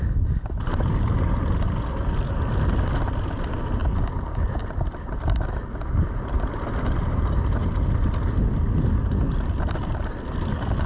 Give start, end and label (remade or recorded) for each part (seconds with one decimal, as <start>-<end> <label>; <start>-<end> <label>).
0.0-10.9 recorded